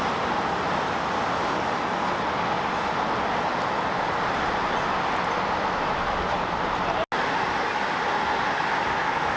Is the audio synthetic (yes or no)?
no